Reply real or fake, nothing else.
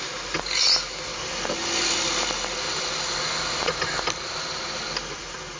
real